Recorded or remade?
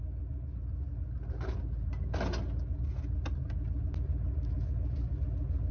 recorded